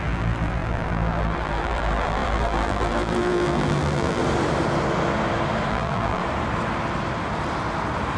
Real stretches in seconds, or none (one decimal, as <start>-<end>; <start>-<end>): 4.2-5.7; 6.2-8.2